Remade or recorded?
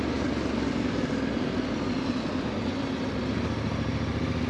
recorded